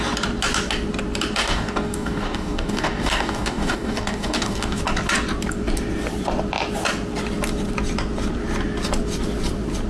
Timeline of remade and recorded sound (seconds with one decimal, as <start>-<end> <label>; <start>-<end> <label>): 0.0-1.4 recorded; 1.4-4.8 remade; 4.8-9.9 recorded